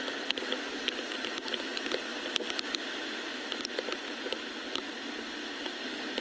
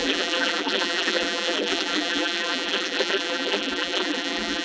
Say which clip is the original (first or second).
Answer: first